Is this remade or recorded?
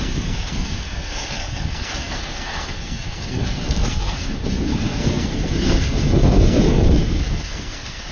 remade